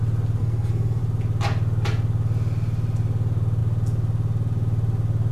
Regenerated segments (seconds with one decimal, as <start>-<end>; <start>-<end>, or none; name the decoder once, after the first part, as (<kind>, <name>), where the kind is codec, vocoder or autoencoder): 0.4-1.0 (codec, SNAC)